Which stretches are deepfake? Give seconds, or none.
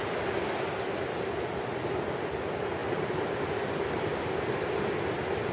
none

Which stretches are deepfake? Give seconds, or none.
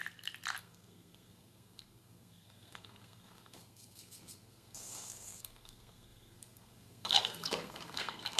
0.6-8.4 (codec, SNAC)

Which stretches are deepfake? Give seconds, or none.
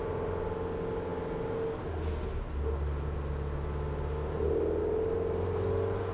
none